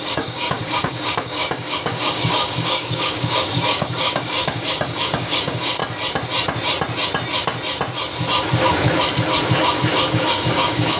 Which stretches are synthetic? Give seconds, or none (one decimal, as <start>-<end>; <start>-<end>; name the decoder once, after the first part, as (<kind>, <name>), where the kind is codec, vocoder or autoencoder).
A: 0.0-5.8 (codec, DAC); 10.1-11.0

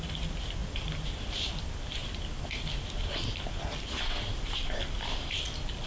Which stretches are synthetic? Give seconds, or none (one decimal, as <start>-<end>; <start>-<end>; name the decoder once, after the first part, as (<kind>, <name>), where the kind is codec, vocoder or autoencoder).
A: none

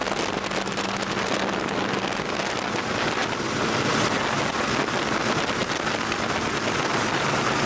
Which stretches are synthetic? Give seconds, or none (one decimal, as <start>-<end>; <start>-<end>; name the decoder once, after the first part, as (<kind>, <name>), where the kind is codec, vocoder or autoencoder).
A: none

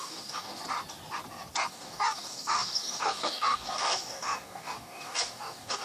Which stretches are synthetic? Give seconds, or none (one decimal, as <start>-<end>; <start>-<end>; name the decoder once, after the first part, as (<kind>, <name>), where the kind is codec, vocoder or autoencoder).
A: 0.0-0.6 (codec, DAC); 1.7-5.8

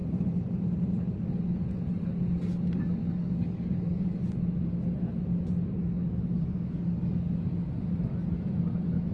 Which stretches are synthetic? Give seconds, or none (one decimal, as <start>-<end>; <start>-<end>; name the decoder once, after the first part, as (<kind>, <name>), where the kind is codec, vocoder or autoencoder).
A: 3.0-4.2 (codec, DAC); 6.0-7.4